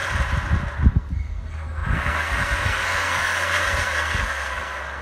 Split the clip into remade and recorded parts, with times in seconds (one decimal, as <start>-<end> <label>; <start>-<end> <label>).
0.0-0.9 recorded; 0.9-5.0 remade